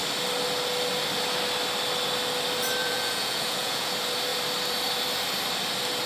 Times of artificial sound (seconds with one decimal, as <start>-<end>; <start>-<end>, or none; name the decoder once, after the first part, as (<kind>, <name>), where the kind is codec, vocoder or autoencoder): 2.8-3.9 (vocoder, Vocos)